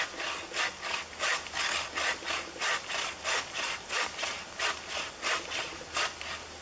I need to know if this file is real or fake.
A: real